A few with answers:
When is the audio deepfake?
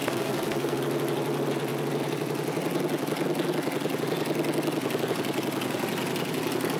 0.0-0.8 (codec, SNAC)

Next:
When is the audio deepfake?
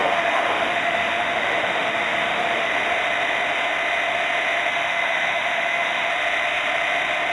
0.0-2.7 (autoencoder, DAC-VAE); 4.7-6.1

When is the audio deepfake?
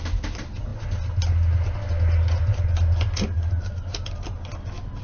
none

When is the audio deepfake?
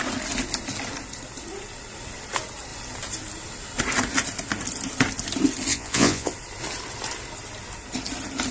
5.7-6.3 (vocoder, Vocos)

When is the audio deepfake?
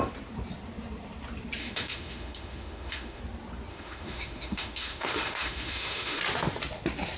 1.6-3.2 (autoencoder, DAC-VAE); 3.7-6.2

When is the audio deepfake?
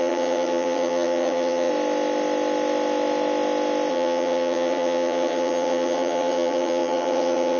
0.0-1.7 (vocoder, HiFi-GAN); 3.9-7.6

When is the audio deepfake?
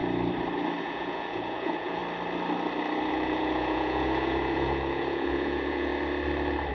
0.8-2.0 (vocoder, Vocos); 3.1-5.9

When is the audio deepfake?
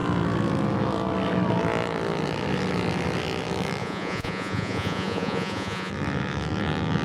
3.8-5.9 (vocoder, Vocos)